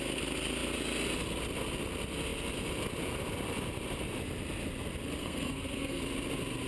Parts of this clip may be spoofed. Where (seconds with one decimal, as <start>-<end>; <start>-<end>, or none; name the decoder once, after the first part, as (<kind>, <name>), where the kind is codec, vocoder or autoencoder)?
5.2-6.0 (codec, SNAC)